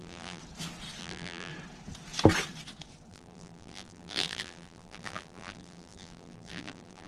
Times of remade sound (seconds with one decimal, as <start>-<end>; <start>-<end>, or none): 0.0-0.4; 1.0-1.5; 3.1-7.1